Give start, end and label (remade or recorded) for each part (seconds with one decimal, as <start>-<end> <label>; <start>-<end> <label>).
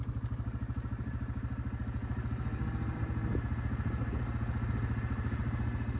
0.0-6.0 recorded